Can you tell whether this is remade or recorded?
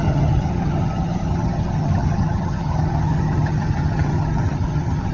remade